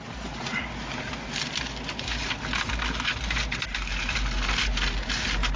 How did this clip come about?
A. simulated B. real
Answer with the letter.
B